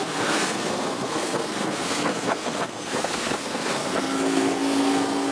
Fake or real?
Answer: fake